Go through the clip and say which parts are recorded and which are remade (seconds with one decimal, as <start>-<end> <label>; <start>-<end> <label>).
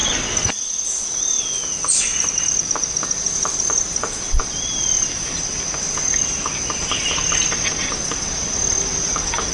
0.0-9.5 recorded